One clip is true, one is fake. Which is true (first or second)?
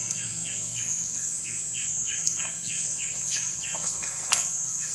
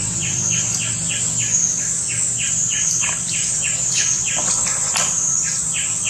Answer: second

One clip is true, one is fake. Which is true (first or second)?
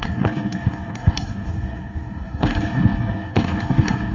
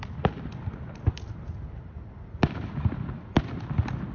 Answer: second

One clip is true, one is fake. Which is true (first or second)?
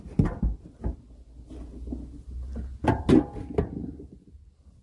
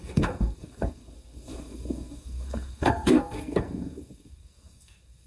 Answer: first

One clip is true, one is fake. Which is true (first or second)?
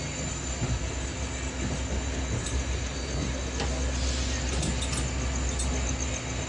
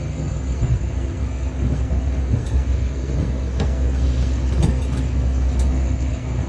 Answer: first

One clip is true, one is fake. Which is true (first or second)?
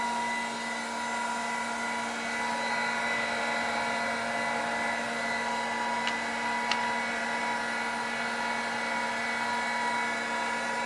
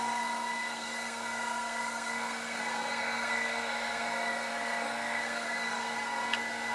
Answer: first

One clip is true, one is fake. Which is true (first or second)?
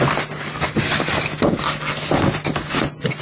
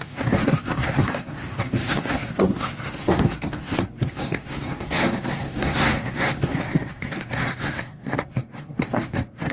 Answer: first